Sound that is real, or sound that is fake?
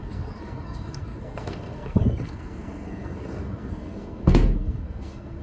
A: fake